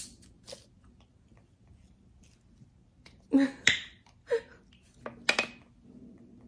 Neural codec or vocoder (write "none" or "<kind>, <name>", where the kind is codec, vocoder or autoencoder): none